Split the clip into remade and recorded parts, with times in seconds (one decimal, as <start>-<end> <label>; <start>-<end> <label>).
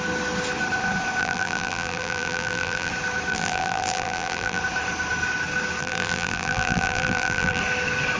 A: 0.0-1.2 recorded; 1.2-2.9 remade; 2.9-3.3 recorded; 3.3-4.6 remade; 4.6-5.8 recorded; 5.8-7.6 remade; 7.6-8.2 recorded